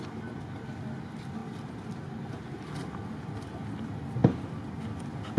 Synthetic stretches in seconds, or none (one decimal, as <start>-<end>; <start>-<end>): none